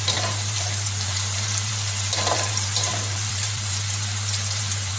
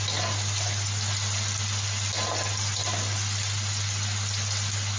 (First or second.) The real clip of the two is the second